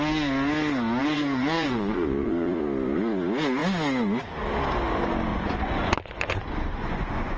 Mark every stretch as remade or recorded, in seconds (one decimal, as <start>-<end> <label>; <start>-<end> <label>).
0.0-1.0 recorded; 1.0-2.5 remade; 2.5-5.3 recorded; 5.3-7.4 remade